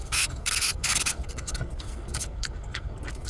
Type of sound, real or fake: fake